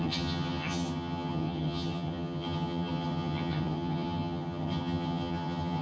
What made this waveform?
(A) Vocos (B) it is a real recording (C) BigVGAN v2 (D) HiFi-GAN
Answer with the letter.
D